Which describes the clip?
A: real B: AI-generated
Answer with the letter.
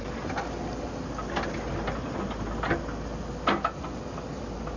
A